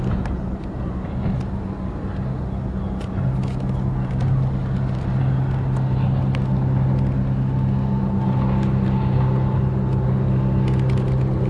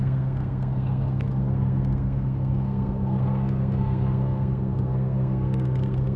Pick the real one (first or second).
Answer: first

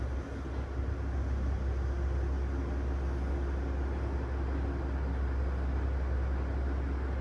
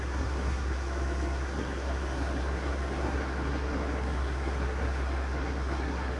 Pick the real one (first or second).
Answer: first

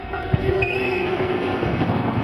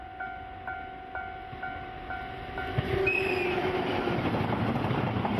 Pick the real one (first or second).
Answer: second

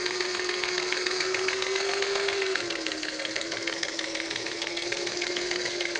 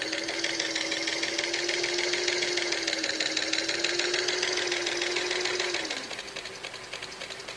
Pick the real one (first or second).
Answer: second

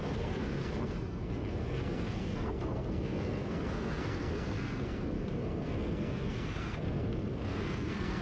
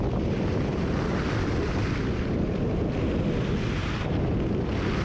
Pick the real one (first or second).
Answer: second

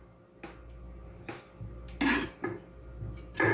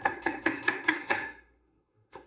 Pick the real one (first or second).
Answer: first